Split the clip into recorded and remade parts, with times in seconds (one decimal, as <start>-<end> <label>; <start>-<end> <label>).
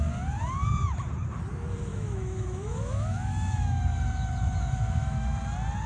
0.0-1.9 recorded; 1.9-5.4 remade; 5.4-5.9 recorded